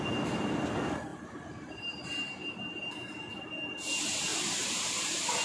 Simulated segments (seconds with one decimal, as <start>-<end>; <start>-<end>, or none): 1.1-2.9; 4.3-5.4